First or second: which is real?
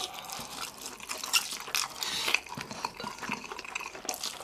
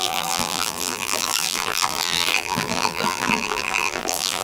first